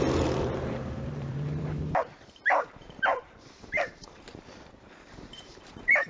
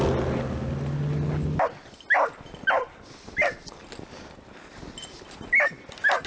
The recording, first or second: second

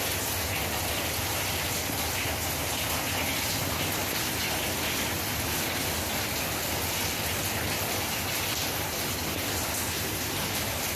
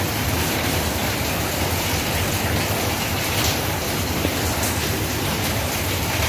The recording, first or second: first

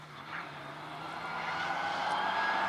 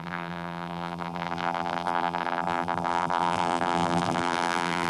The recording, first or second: first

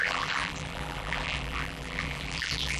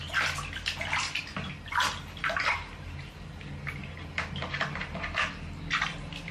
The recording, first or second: second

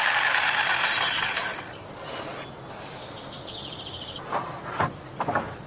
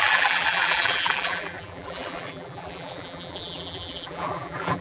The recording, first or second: first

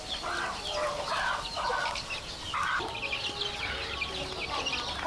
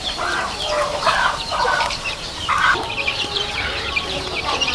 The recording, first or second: first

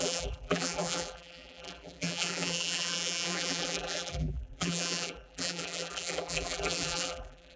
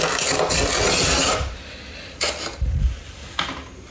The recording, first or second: second